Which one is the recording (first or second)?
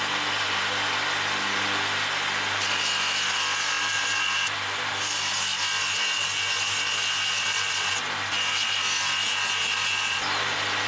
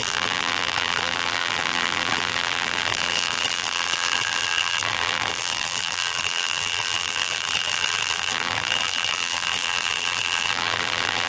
first